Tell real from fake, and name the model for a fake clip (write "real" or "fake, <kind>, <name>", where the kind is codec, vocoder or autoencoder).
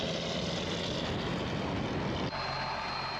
real